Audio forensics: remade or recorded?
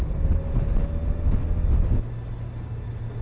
recorded